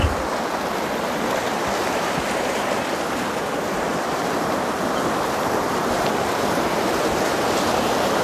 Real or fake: real